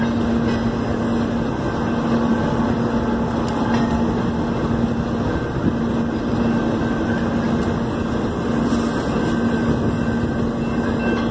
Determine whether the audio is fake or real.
real